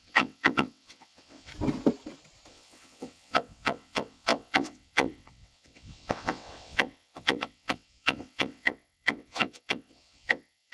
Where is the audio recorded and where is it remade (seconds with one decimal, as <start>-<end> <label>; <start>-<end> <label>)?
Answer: 0.0-1.5 remade; 1.5-2.5 recorded; 2.5-10.7 remade

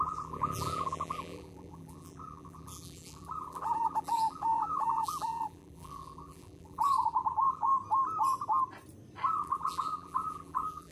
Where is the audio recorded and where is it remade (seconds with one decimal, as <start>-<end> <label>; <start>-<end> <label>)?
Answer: 0.0-7.7 remade; 7.7-9.4 recorded; 9.4-10.9 remade